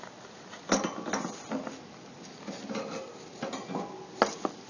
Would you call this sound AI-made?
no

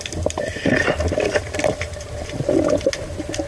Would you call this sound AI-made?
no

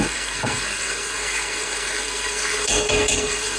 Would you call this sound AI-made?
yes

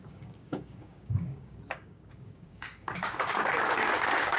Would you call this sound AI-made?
yes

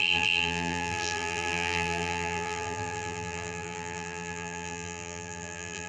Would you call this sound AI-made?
yes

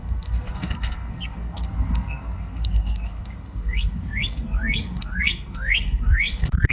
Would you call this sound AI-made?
yes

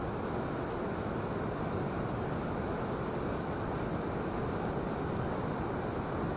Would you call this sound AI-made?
no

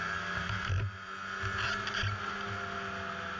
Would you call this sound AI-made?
no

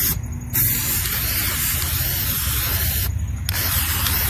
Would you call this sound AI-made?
no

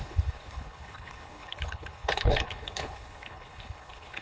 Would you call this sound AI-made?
yes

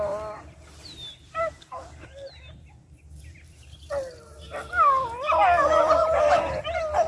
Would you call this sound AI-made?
no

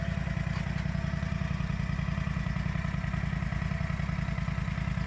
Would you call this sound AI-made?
no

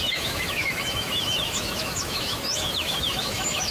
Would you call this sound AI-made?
yes